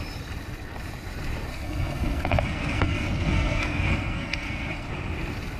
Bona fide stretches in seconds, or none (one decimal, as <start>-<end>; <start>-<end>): 0.0-1.5; 4.9-5.6